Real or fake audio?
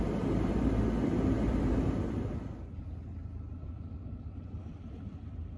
real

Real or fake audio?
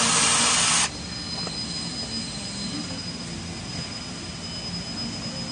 real